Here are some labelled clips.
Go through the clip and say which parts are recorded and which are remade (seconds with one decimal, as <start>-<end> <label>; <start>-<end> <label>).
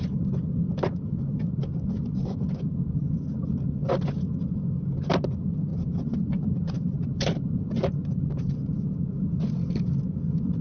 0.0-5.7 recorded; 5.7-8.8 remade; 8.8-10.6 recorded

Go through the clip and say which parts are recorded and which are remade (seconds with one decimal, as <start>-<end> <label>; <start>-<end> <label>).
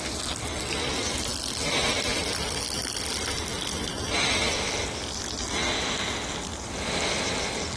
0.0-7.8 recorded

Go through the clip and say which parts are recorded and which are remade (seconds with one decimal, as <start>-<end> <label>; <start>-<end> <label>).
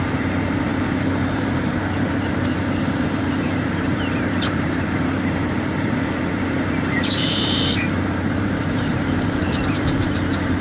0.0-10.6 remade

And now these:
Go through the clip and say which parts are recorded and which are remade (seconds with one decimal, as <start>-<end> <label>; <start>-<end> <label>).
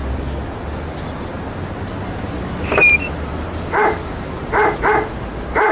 0.0-3.4 recorded; 3.4-5.7 remade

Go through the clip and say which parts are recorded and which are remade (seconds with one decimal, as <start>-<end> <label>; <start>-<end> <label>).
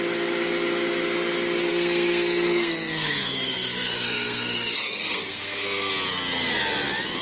0.0-1.7 recorded; 1.7-5.9 remade; 5.9-7.2 recorded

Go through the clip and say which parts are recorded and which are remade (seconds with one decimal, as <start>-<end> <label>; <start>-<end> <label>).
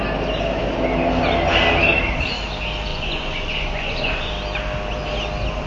0.0-2.9 recorded; 2.9-4.3 remade; 4.3-5.7 recorded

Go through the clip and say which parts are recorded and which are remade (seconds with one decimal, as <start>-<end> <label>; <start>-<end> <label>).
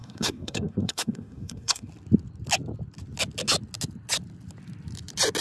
0.0-1.9 remade; 1.9-5.4 recorded